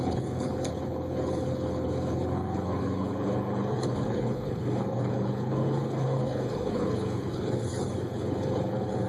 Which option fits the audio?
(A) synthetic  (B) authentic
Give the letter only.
A